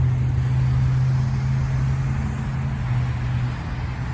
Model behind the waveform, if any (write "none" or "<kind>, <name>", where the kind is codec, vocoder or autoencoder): none